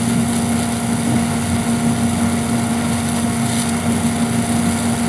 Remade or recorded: recorded